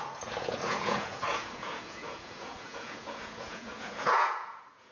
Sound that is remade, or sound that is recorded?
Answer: remade